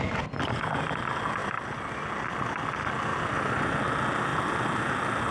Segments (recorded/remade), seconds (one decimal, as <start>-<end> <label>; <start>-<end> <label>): 0.0-1.4 recorded; 1.4-2.0 remade; 2.0-3.1 recorded; 3.1-3.7 remade; 3.7-4.3 recorded; 4.3-5.3 remade